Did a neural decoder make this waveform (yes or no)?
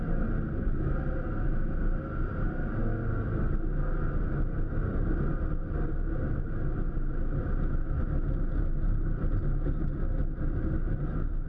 no